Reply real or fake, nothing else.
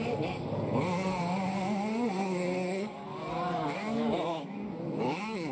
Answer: fake